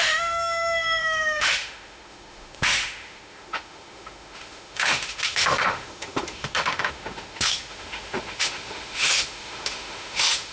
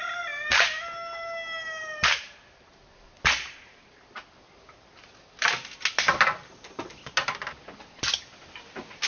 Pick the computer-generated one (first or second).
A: first